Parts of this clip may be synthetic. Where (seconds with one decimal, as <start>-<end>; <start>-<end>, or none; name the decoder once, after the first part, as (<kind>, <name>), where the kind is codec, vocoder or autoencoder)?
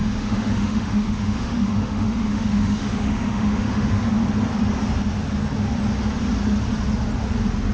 0.0-3.9 (autoencoder, DAC-VAE)